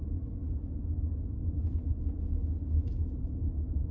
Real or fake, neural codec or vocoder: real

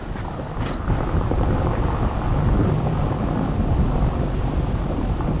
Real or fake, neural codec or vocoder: real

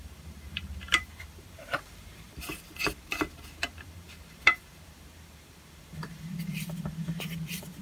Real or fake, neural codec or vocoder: fake, vocoder, BigVGAN v2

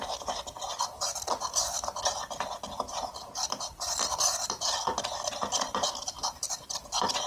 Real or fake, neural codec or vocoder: real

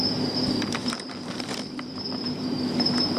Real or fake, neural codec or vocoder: fake, vocoder, BigVGAN v2